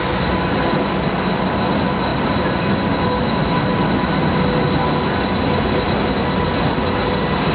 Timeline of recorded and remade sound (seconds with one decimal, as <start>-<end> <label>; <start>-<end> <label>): 0.0-7.5 recorded